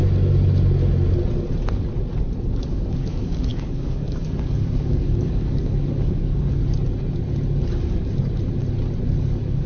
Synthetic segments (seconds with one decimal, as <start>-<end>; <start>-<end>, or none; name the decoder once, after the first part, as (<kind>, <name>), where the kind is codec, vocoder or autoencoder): 2.5-6.6 (codec, DAC); 9.2-9.7